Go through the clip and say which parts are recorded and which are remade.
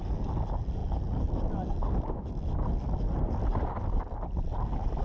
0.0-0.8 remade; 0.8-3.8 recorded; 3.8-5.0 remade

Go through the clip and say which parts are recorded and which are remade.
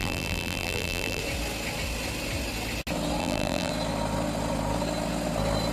0.0-1.2 remade; 1.2-3.2 recorded; 3.2-3.7 remade; 3.7-5.7 recorded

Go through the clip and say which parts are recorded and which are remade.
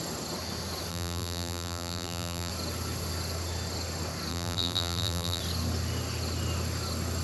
0.0-0.9 recorded; 0.9-2.5 remade; 2.5-4.3 recorded; 4.3-5.4 remade; 5.4-7.2 recorded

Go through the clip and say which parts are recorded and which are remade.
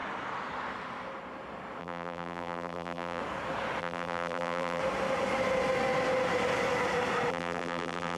0.0-1.8 recorded; 1.8-3.2 remade; 3.2-3.8 recorded; 3.8-4.8 remade; 4.8-7.3 recorded; 7.3-8.2 remade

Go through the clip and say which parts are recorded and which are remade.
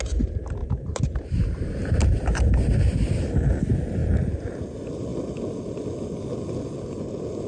0.0-0.6 recorded; 0.6-2.4 remade; 2.4-4.0 recorded; 4.0-4.6 remade; 4.6-7.5 recorded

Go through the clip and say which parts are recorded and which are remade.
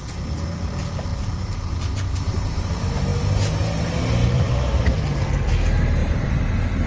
0.0-1.1 recorded; 1.1-2.7 remade; 2.7-4.2 recorded; 4.2-4.8 remade; 4.8-6.0 recorded; 6.0-6.9 remade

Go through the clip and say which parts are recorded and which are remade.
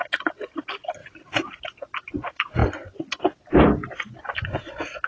0.0-1.0 recorded; 1.0-1.6 remade; 1.6-5.1 recorded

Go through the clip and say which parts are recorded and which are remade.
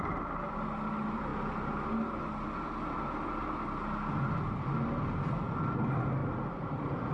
0.0-6.2 recorded; 6.2-7.1 remade